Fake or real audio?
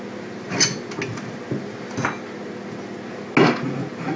real